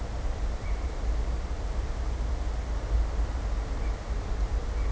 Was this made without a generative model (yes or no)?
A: yes